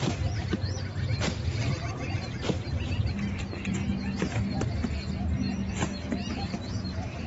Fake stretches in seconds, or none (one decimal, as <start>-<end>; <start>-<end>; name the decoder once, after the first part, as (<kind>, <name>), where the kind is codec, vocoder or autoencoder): 0.0-0.9 (vocoder, BigVGAN v2); 1.9-3.8